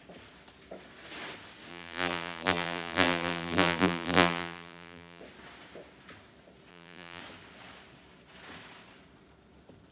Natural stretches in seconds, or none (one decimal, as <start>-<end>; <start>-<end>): 0.0-1.7; 5.2-6.7; 7.2-9.9